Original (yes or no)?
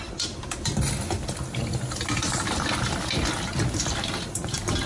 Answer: yes